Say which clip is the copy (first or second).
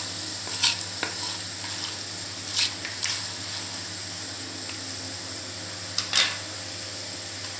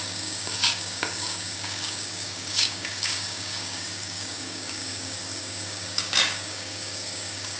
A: second